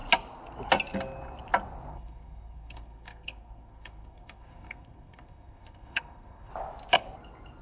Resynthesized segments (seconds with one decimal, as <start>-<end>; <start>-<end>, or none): 1.9-6.5